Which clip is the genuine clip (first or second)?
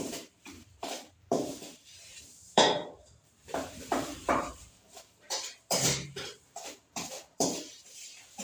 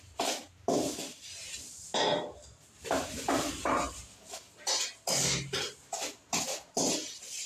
second